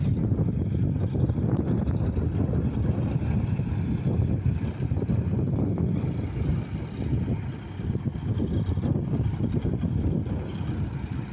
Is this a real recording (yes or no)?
yes